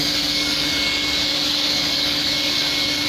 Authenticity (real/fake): fake